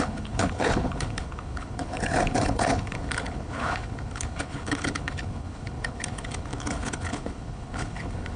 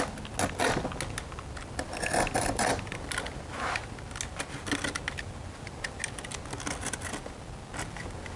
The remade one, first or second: first